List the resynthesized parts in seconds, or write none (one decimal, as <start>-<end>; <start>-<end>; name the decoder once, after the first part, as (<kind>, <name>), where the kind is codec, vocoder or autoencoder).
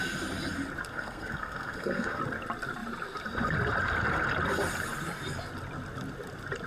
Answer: 0.9-2.2 (codec, SNAC)